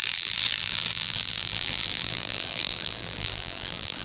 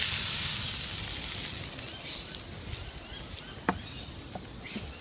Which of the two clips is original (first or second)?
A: second